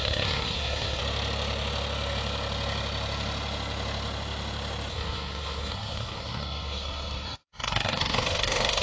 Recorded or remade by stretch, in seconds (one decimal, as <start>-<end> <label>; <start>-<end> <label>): 0.0-1.0 remade; 1.0-4.9 recorded; 4.9-8.8 remade